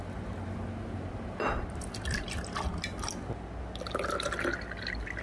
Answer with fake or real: real